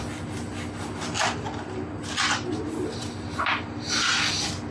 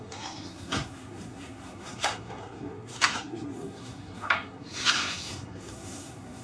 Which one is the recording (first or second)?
first